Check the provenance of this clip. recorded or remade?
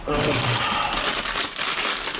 recorded